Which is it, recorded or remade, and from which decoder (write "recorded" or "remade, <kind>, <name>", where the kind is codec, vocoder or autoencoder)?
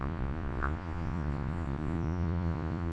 remade, vocoder, Vocos